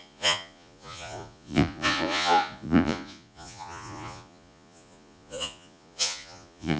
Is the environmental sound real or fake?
fake